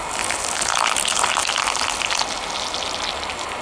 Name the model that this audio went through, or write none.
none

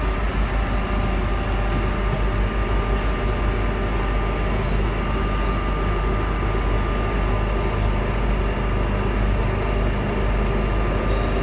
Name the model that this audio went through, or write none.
none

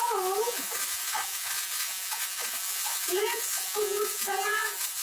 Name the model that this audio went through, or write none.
vocoder, Vocos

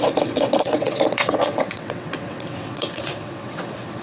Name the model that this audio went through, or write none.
vocoder, WaveNeXt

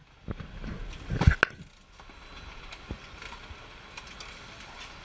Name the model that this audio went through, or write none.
none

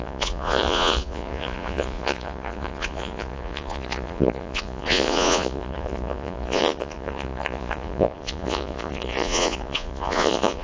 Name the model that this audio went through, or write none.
vocoder, Vocos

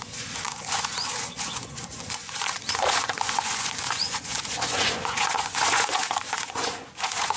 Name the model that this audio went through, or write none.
vocoder, Vocos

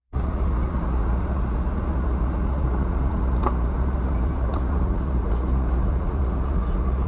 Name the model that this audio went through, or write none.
vocoder, Vocos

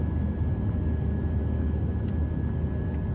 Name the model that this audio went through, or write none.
none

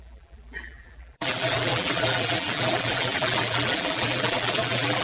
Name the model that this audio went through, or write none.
vocoder, BigVGAN v2